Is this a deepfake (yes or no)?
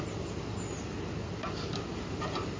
no